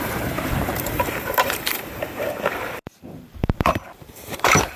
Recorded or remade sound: remade